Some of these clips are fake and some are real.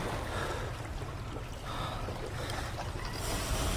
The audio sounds real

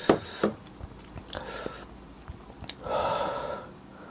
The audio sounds real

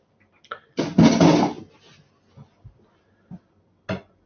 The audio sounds real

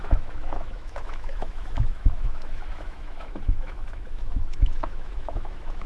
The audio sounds fake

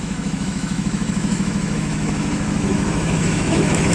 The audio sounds fake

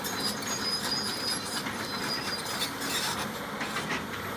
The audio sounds real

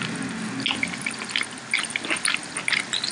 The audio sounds real